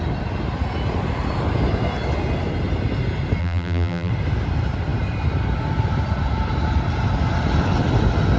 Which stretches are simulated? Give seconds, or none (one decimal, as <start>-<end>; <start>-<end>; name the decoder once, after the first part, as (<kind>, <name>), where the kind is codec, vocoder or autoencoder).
3.4-4.1 (vocoder, BigVGAN v2)